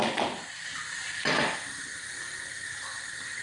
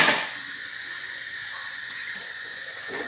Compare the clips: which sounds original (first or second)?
first